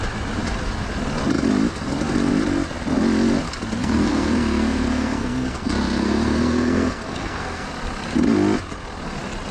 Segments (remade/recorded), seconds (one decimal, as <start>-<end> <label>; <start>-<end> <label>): 0.0-3.8 recorded; 3.8-7.7 remade; 7.7-9.5 recorded